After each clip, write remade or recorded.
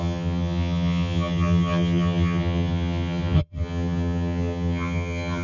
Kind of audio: remade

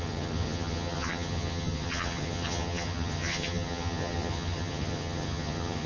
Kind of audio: remade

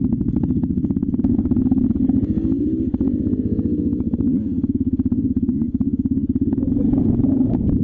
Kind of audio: recorded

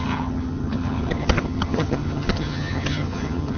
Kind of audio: remade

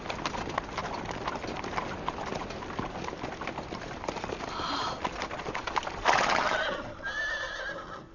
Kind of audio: recorded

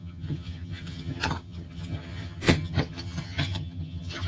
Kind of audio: remade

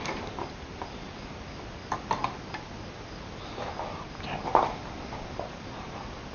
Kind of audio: recorded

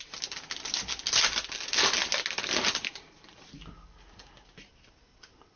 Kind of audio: recorded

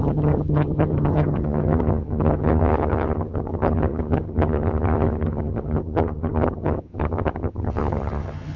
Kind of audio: remade